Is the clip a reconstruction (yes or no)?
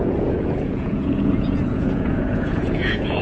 yes